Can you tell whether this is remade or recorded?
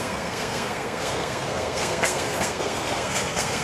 remade